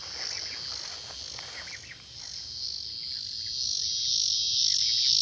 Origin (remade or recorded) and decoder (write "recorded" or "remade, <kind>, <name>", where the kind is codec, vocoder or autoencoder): recorded